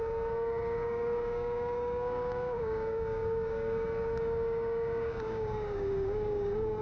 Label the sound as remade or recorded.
remade